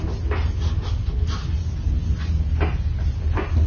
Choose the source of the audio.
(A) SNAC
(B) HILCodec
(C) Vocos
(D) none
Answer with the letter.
D